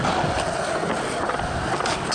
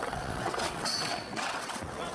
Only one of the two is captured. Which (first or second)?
first